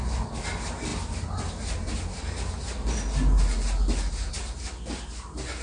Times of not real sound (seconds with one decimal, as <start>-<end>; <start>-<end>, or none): none